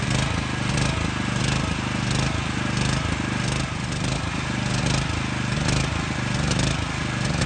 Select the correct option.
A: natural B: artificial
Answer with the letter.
A